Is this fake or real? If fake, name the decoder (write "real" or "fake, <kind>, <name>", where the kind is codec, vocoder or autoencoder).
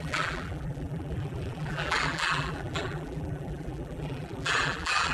fake, vocoder, BigVGAN v2